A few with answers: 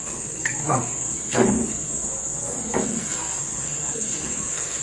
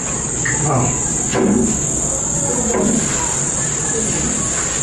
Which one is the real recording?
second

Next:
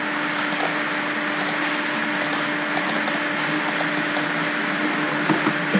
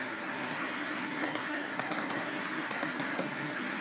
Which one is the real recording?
first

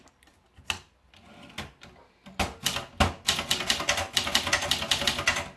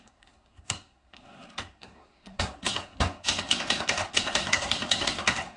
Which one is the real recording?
first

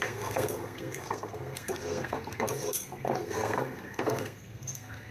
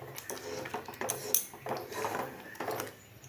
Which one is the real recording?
second